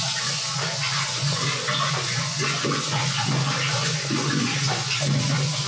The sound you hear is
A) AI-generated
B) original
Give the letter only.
A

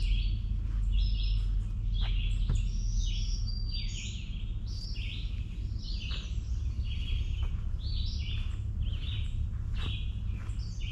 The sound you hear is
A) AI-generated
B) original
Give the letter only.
B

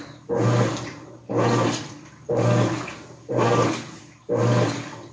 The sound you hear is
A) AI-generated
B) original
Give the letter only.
B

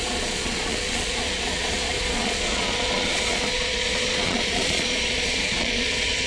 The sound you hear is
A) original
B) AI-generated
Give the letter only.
B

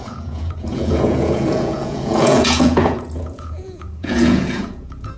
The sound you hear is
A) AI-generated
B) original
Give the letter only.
A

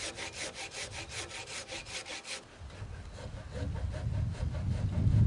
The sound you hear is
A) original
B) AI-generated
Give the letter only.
A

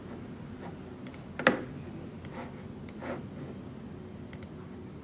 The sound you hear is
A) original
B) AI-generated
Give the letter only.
A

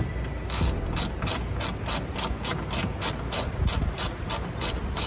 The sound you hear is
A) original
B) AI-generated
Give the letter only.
A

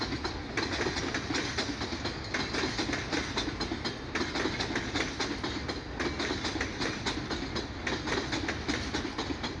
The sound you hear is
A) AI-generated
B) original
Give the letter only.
B